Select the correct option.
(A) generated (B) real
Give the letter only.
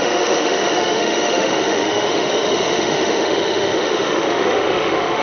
A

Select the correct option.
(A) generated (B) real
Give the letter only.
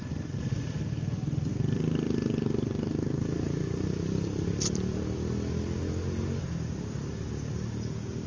B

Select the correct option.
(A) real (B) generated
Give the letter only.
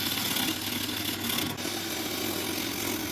A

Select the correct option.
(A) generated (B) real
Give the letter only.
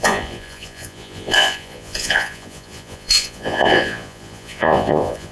A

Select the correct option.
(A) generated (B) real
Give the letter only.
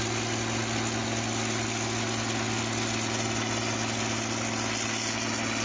B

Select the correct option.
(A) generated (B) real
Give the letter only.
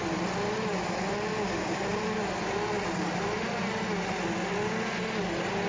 B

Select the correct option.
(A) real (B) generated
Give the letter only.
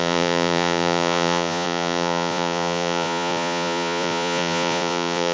B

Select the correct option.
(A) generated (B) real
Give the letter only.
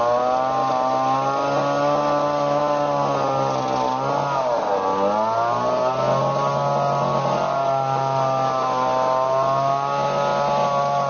B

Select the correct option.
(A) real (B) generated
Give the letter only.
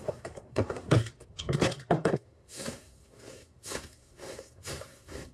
B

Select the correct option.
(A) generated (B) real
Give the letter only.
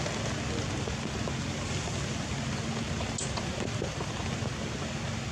B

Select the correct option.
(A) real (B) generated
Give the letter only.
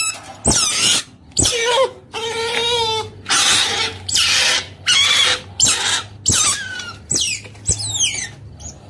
A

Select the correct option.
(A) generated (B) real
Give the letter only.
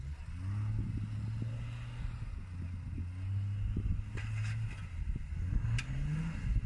B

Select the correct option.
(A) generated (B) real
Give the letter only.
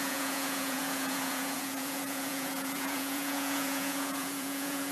A